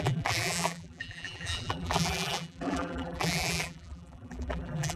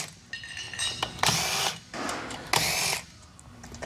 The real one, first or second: second